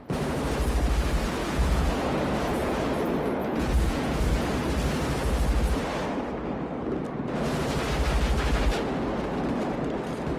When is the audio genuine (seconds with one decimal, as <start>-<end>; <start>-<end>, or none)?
0.0-1.4; 2.8-3.4; 4.2-10.4